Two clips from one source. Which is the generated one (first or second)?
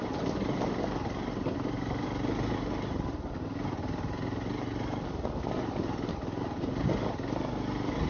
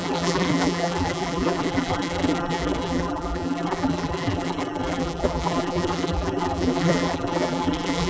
second